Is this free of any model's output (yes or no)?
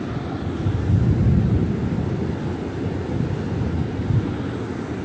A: yes